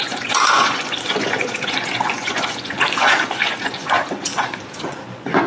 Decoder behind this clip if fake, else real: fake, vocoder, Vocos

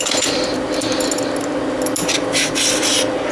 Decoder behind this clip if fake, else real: real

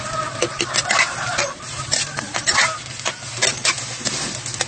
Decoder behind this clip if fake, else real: real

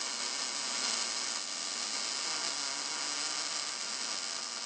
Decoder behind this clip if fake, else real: real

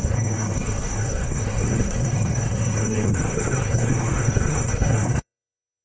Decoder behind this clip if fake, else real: fake, codec, SNAC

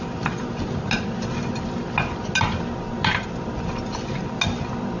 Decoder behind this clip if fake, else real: real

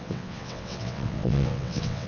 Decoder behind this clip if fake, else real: fake, vocoder, WaveNeXt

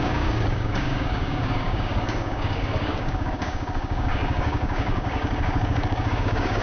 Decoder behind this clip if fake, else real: fake, codec, DAC